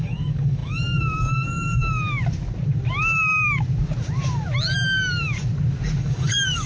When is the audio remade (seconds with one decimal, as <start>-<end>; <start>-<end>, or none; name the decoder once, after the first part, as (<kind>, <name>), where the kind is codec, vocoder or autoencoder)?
0.0-2.0 (codec, DAC); 6.0-6.7